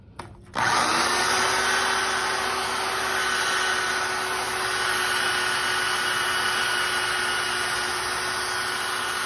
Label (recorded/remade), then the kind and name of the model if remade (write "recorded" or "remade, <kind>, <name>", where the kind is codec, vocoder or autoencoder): recorded